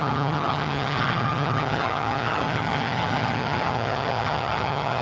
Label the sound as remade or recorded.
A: remade